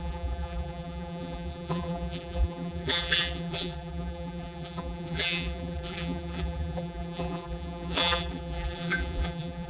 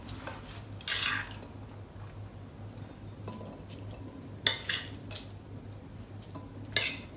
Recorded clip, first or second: second